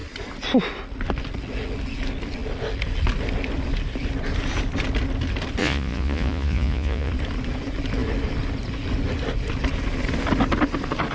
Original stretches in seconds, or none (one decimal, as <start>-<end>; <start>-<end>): 0.0-5.6; 7.1-11.1